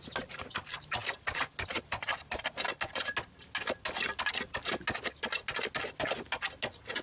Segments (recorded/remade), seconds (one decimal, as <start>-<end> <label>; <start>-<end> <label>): 0.0-7.0 recorded